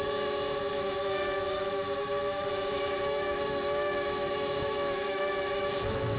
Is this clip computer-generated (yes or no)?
yes